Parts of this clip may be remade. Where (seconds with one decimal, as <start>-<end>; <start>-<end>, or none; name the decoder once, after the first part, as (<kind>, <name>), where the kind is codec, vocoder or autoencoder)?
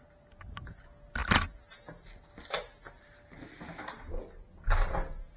none